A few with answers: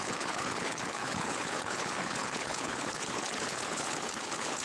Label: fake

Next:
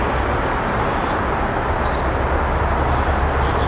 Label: real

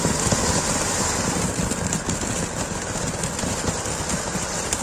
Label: real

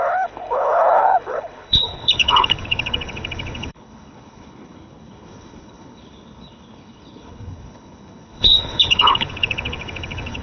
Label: fake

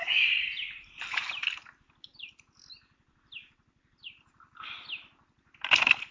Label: real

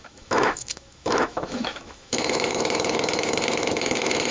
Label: fake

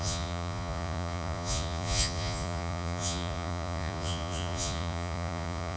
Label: fake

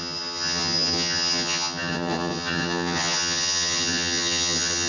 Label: fake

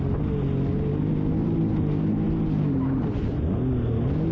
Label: real